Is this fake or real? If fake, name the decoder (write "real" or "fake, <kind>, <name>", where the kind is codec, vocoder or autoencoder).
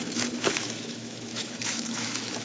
fake, autoencoder, DAC-VAE